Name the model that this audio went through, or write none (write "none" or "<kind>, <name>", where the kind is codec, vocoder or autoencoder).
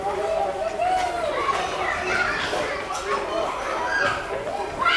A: none